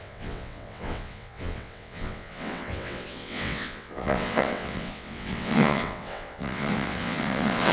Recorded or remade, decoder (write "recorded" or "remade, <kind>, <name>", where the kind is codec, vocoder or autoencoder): remade, vocoder, WaveNeXt